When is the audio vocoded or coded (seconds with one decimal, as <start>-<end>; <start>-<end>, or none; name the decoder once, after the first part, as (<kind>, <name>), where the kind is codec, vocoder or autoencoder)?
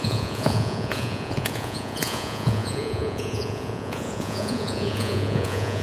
0.0-5.8 (vocoder, Vocos)